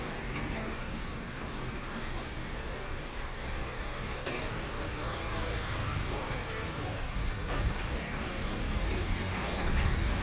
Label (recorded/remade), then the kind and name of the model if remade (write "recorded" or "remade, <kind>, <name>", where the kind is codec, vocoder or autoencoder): remade, codec, DAC